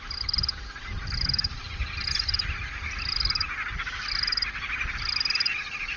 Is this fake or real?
real